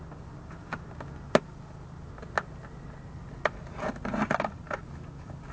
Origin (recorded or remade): recorded